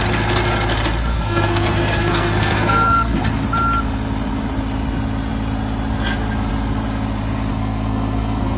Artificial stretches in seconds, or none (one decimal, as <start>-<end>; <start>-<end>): 1.1-3.2; 7.5-8.6